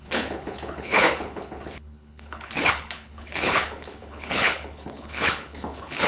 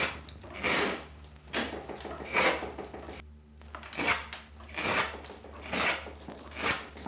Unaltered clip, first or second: second